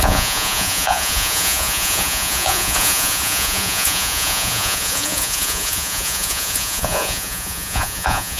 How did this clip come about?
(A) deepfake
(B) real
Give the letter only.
A